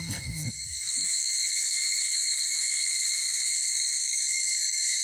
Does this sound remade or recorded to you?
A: remade